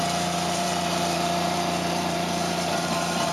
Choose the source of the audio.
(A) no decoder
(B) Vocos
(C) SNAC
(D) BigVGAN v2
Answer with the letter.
D